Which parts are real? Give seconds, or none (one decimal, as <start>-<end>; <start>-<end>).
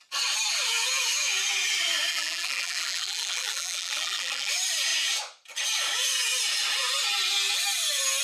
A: 0.0-2.1; 4.5-8.2